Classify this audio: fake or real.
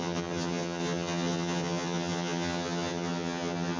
fake